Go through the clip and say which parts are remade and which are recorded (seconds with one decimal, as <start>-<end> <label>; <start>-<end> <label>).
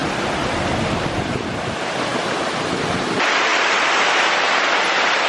0.0-3.5 recorded; 3.5-4.1 remade; 4.1-5.3 recorded